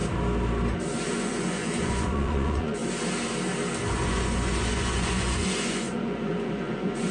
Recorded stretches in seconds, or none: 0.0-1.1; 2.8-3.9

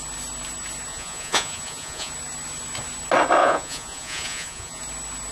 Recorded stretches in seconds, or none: 0.0-0.9; 2.1-3.4; 4.8-5.3

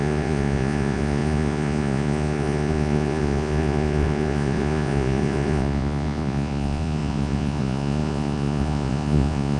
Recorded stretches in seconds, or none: none

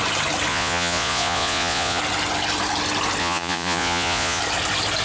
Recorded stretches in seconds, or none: 0.0-0.5; 2.0-3.2; 4.4-5.0

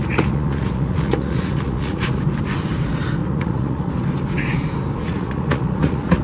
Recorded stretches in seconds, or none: 2.2-3.2; 3.9-5.0